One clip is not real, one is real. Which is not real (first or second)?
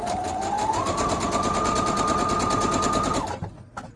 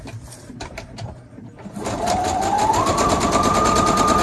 second